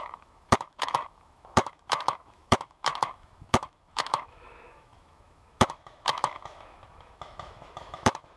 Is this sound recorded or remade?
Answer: remade